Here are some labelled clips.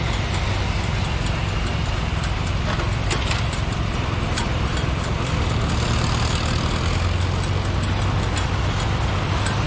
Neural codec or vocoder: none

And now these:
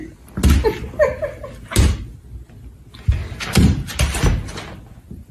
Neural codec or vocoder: none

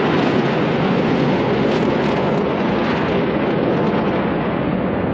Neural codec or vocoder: vocoder, Vocos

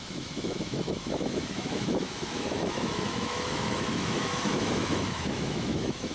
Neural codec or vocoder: autoencoder, DAC-VAE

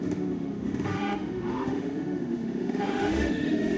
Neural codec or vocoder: autoencoder, DAC-VAE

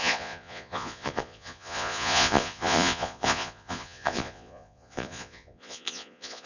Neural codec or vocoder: vocoder, Vocos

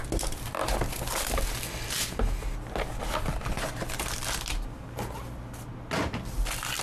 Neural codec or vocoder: none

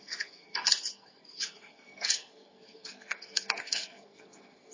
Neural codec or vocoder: codec, SNAC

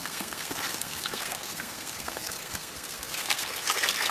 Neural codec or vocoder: codec, SNAC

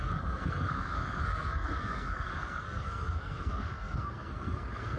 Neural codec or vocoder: codec, SNAC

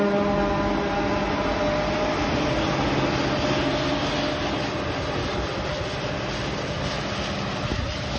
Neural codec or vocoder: none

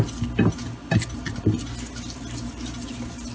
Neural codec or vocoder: none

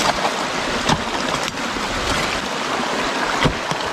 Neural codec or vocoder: none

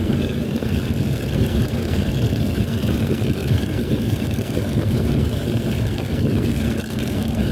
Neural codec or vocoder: codec, SNAC